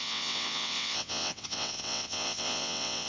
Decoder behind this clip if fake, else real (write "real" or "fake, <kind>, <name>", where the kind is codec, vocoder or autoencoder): fake, vocoder, WaveNeXt